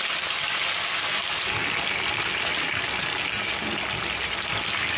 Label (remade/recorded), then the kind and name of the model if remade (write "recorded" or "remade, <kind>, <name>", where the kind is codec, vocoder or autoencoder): recorded